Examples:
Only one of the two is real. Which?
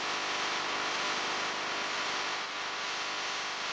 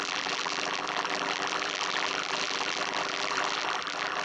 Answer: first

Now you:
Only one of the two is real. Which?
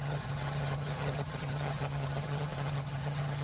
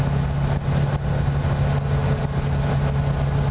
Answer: second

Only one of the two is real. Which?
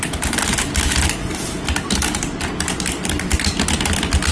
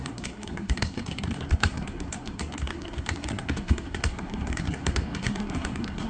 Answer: first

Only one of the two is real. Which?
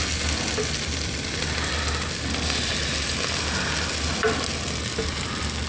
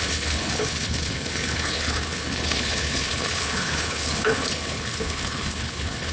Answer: first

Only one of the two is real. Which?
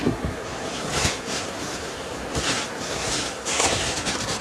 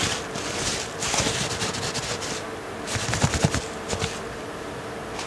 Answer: second